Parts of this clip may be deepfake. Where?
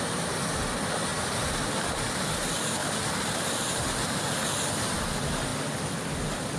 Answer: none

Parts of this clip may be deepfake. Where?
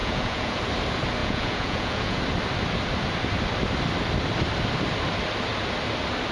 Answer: 0.0-0.6; 1.2-2.2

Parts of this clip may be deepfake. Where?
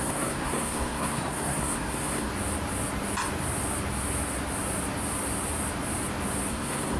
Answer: 0.0-2.3; 6.5-7.0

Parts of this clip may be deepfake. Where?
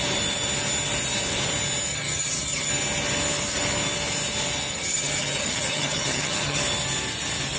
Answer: 1.9-2.7; 4.7-6.6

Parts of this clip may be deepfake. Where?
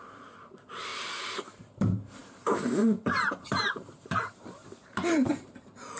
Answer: 0.0-6.0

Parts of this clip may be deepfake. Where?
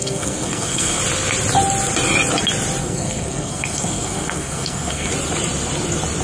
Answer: 0.0-1.0; 2.8-5.1